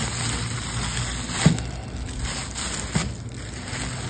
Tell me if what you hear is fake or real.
real